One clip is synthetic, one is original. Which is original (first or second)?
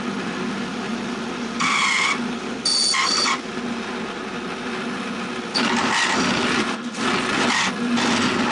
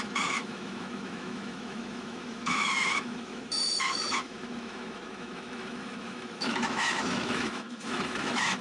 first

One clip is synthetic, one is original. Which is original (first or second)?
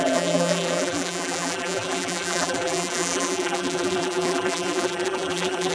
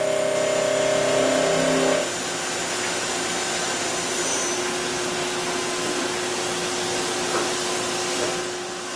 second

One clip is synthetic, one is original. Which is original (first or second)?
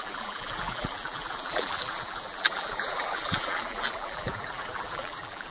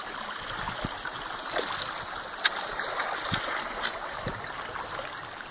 second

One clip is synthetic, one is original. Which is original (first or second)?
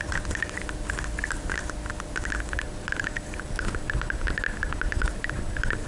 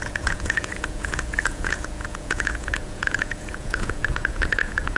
first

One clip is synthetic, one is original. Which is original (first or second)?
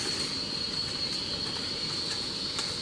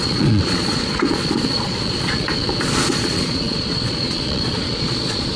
first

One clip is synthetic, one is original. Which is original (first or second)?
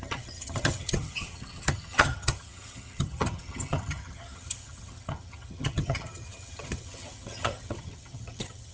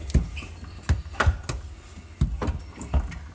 second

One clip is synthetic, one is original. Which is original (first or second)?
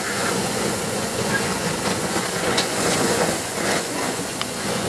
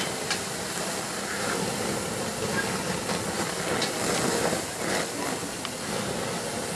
second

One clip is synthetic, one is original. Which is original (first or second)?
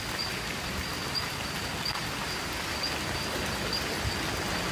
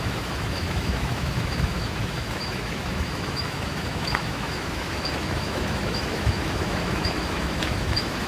first